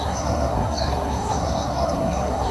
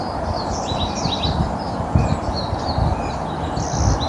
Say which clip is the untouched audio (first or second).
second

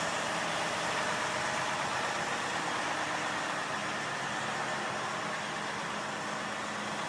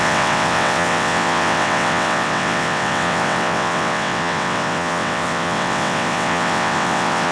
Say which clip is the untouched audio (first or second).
first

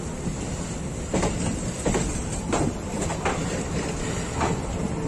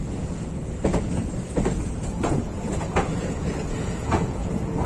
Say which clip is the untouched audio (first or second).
first